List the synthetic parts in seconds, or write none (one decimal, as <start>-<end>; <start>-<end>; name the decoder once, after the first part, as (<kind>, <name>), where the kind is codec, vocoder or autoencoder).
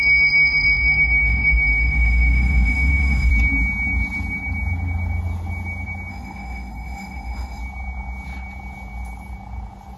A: 0.0-3.3 (autoencoder, DAC-VAE); 6.1-7.6